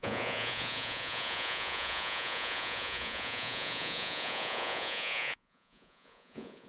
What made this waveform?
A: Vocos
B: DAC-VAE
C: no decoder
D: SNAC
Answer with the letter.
A